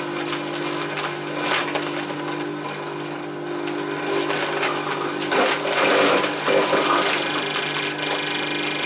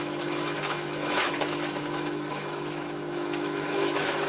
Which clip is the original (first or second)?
first